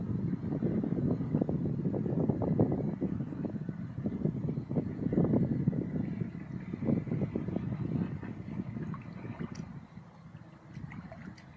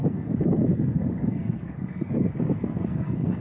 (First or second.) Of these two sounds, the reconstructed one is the second